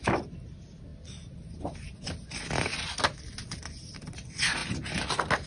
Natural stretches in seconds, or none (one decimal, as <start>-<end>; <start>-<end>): 0.0-5.5